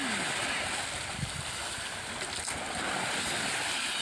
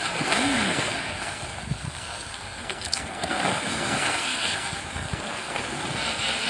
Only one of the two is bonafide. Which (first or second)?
first